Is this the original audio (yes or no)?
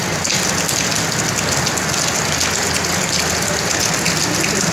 yes